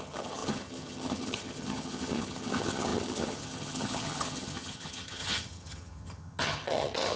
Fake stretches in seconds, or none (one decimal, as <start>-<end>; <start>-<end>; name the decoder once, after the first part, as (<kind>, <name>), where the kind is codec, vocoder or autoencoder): 0.0-7.2 (vocoder, HiFi-GAN)